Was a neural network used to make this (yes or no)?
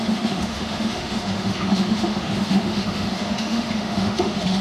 yes